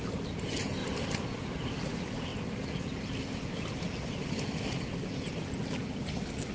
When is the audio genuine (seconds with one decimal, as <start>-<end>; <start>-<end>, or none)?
0.0-6.5